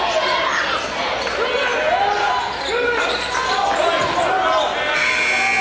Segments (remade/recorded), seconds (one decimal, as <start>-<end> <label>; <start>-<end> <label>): 0.0-5.6 recorded